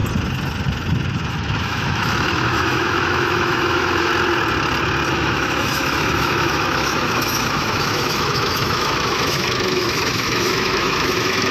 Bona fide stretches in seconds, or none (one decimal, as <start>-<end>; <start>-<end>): 0.0-1.3; 4.1-5.1

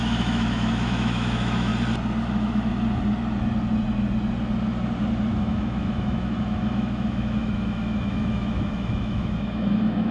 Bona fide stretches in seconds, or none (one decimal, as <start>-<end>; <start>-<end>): 1.7-2.3; 2.7-5.4

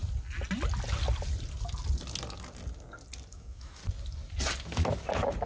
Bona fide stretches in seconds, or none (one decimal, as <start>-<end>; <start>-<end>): 0.0-3.3; 3.8-5.5

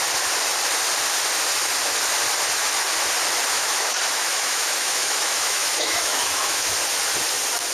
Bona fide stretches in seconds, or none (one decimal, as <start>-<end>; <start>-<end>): 0.0-3.5; 6.7-7.7

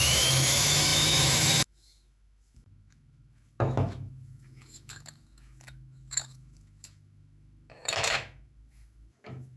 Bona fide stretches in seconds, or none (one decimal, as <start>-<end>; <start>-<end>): none